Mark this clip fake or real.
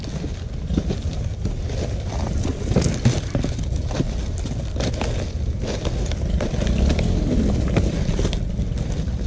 real